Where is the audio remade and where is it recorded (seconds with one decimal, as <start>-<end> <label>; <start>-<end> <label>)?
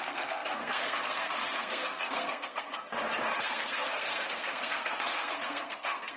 0.0-2.7 remade; 2.7-3.4 recorded; 3.4-6.2 remade